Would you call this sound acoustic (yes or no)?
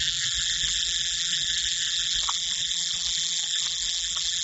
no